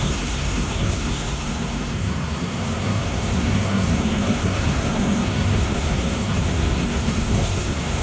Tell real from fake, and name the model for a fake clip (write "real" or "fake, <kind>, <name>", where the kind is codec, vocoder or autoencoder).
fake, codec, SNAC